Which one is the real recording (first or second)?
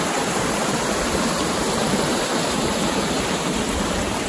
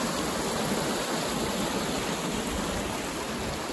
second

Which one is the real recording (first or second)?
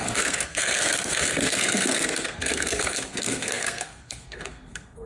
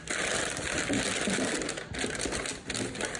second